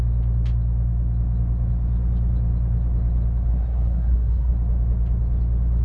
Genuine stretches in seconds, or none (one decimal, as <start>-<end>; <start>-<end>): 0.0-3.5; 4.5-5.8